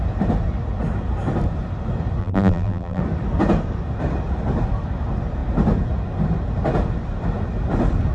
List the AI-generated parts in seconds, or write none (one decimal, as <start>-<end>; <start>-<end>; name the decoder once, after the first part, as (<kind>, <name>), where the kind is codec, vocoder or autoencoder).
2.2-3.0 (vocoder, BigVGAN v2)